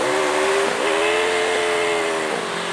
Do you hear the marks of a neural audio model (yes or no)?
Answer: no